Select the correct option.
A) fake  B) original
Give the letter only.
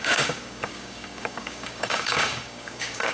A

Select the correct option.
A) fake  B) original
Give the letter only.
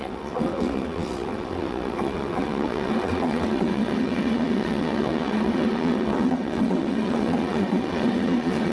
A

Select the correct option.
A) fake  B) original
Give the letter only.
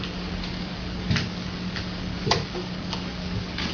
A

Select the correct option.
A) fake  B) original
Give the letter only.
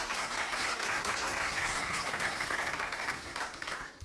A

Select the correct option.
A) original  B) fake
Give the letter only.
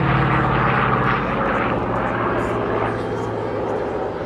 A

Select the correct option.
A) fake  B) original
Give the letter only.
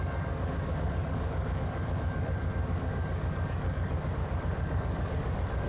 A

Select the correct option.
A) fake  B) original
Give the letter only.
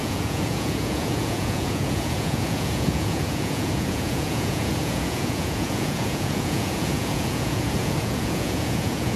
A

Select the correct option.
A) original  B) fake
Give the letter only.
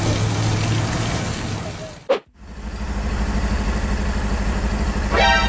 A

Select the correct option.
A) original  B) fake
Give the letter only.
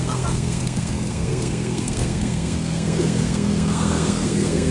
B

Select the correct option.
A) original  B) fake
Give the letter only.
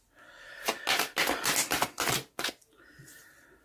A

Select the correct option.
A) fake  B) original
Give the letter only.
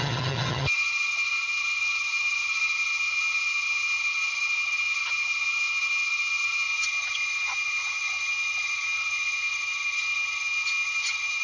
A